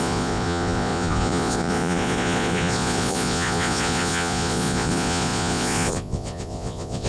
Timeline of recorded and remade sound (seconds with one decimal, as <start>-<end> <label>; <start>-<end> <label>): 0.0-7.1 remade